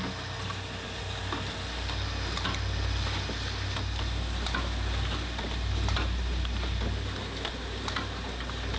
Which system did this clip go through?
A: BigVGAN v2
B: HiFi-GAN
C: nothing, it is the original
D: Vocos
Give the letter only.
C